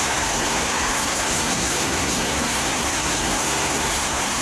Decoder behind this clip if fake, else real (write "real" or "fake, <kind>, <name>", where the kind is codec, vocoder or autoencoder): fake, codec, SNAC